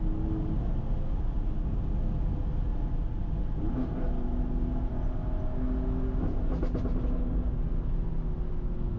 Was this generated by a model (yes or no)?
no